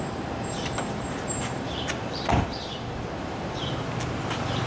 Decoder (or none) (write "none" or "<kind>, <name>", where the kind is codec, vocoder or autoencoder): vocoder, BigVGAN v2